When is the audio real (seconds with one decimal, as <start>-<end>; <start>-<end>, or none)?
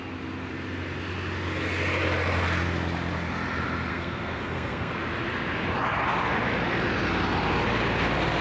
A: 0.0-3.9; 4.9-8.4